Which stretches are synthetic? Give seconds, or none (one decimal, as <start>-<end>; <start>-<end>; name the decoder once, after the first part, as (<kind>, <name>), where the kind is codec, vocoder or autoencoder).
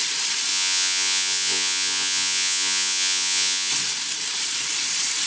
0.5-3.7 (vocoder, Vocos)